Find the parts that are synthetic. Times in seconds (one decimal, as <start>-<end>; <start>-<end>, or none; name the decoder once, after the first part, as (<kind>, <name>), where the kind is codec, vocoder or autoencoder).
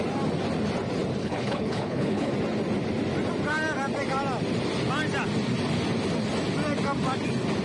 1.2-2.3 (codec, HILCodec)